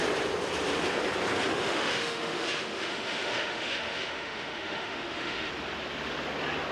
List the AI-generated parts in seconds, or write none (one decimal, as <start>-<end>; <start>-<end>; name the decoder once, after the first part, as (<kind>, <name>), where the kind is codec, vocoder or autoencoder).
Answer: 1.5-5.5 (autoencoder, DAC-VAE)